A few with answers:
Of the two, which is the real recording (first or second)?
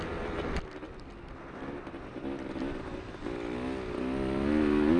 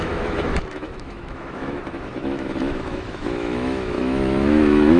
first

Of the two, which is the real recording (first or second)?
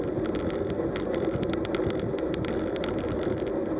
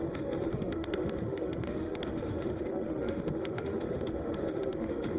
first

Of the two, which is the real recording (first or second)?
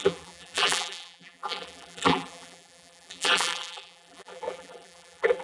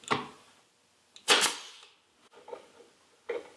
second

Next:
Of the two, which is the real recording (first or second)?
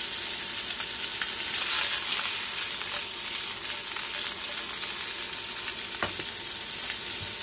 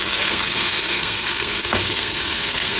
first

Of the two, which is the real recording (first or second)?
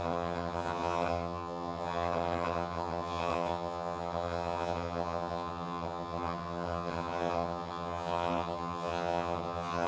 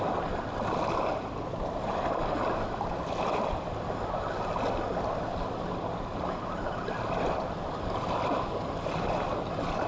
second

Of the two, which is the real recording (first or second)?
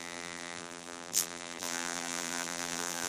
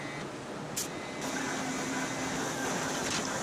second